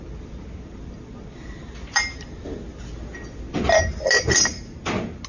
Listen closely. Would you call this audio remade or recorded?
recorded